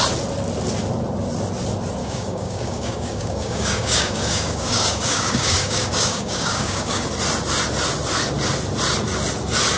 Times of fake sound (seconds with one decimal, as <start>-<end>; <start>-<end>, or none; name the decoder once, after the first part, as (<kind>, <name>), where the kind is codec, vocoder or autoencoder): 2.0-7.1 (codec, DAC)